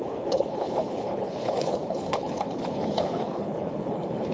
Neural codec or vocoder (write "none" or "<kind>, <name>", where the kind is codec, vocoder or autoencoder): codec, HILCodec